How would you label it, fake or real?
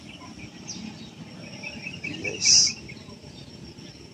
real